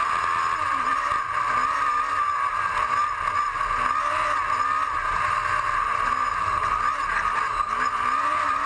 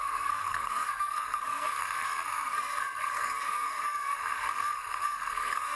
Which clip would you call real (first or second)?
first